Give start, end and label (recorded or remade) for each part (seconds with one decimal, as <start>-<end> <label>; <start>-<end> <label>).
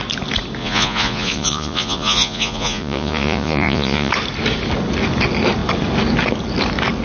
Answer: 0.0-0.6 recorded; 0.6-4.1 remade; 4.1-7.0 recorded